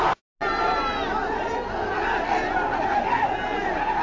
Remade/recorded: recorded